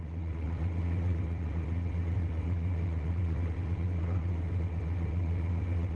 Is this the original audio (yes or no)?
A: no